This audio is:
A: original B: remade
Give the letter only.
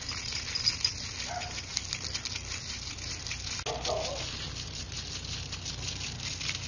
A